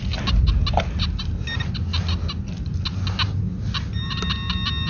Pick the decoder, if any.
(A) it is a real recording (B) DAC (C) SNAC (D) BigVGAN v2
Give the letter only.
A